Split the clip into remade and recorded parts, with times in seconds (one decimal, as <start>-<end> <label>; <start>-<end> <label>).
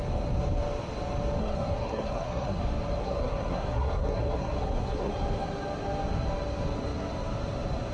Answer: 0.0-1.4 recorded; 1.4-2.6 remade; 2.6-3.0 recorded; 3.0-5.1 remade; 5.1-7.9 recorded